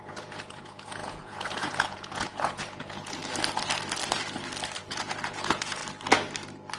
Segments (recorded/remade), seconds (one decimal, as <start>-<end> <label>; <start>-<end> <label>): 0.0-3.2 remade; 3.2-4.8 recorded; 4.8-5.8 remade; 5.8-6.8 recorded

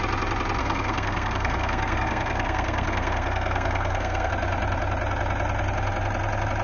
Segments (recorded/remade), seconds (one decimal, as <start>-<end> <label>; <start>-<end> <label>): 0.0-0.6 recorded; 0.6-4.3 remade; 4.3-6.6 recorded

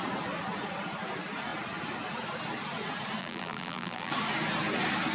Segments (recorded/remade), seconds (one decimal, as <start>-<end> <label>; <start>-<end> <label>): 0.0-3.2 recorded; 3.2-4.1 remade; 4.1-5.1 recorded

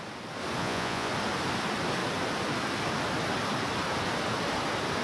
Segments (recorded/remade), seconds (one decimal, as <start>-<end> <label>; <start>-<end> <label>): 0.0-0.6 recorded; 0.6-1.1 remade; 1.1-5.0 recorded

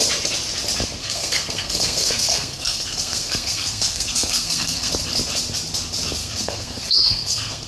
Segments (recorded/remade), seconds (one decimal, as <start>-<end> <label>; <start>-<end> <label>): 0.0-1.0 recorded; 1.0-4.9 remade; 4.9-6.2 recorded; 6.2-7.7 remade

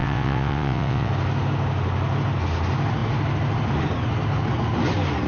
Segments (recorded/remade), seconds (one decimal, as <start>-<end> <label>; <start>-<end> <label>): 0.0-1.1 remade; 1.1-5.3 recorded

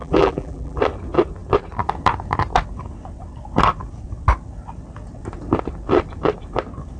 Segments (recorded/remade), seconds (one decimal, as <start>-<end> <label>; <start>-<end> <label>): 0.0-0.8 remade; 0.8-7.0 recorded

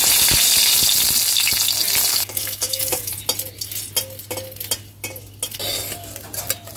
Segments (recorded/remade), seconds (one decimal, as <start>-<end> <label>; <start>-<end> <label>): 0.0-2.1 recorded; 2.1-3.1 remade; 3.1-6.8 recorded